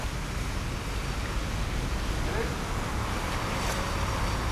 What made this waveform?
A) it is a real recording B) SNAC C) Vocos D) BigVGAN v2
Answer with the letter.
A